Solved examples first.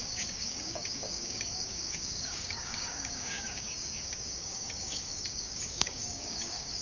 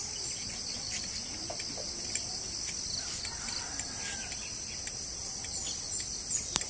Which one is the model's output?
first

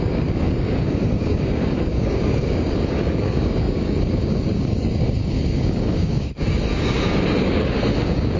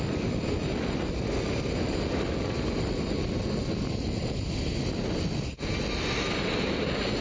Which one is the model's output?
first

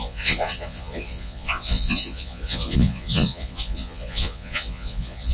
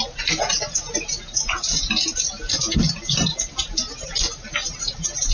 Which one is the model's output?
first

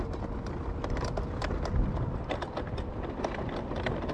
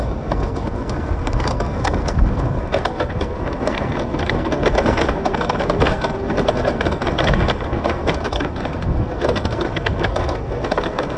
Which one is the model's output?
second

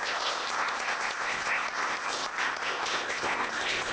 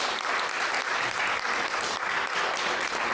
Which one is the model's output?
first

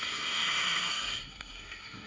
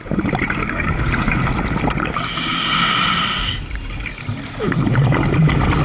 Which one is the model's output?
first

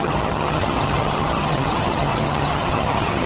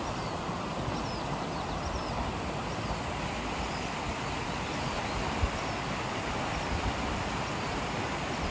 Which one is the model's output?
first